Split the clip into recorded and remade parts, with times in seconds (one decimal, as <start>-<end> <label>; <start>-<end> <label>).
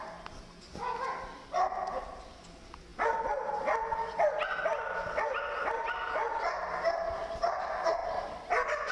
0.0-8.9 recorded